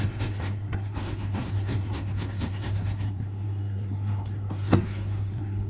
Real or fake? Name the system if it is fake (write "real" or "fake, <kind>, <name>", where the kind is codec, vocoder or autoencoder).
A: fake, codec, SNAC